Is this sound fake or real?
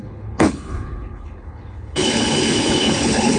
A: fake